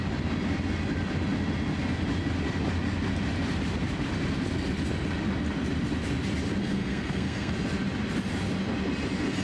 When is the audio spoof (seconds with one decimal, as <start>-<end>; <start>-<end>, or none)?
6.6-7.5